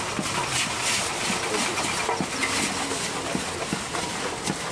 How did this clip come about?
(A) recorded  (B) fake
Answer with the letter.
A